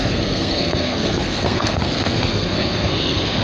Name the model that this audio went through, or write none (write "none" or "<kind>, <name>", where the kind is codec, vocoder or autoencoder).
codec, SNAC